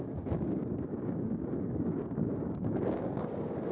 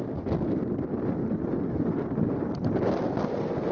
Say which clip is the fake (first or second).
first